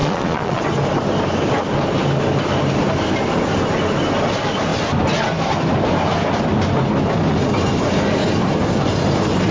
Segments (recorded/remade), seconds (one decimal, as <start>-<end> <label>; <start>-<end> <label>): 0.0-0.6 remade; 0.6-9.5 recorded